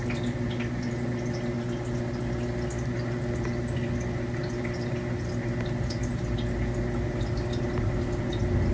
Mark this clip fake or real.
real